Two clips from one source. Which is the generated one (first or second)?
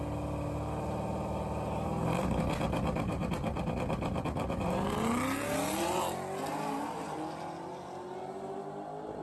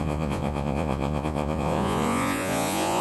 second